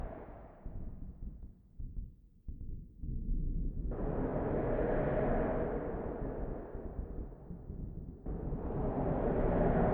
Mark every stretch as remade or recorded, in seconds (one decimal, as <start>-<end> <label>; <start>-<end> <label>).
0.0-1.8 remade; 1.8-9.9 recorded